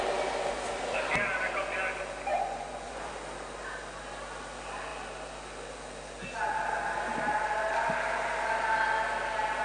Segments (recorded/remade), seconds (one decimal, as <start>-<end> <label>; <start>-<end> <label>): 0.0-2.3 recorded; 2.3-3.1 remade; 3.1-9.6 recorded